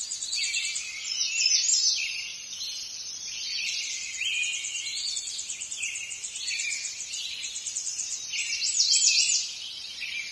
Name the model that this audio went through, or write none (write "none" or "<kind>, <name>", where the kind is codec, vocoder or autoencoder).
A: none